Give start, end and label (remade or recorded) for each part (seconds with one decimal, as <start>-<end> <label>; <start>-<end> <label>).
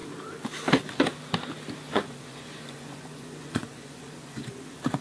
0.0-1.9 recorded; 1.9-5.0 remade